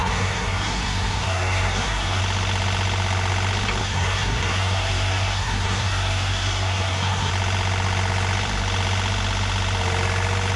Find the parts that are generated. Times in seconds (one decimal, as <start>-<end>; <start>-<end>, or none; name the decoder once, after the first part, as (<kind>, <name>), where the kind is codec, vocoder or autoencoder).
0.0-2.2 (codec, SNAC); 3.8-7.3